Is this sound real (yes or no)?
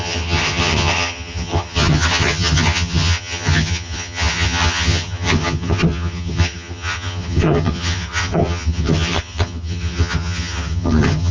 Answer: no